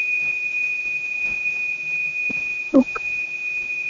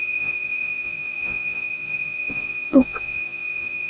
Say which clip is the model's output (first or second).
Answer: second